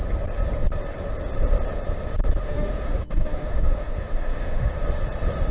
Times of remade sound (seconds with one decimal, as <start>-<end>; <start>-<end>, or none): 2.4-4.7